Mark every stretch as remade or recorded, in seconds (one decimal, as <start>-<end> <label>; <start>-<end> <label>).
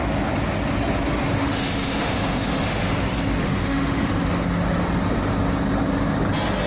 0.0-1.4 recorded; 1.4-2.9 remade; 2.9-3.4 recorded; 3.4-4.2 remade; 4.2-6.7 recorded